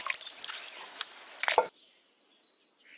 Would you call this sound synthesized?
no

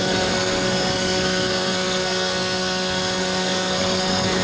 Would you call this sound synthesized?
yes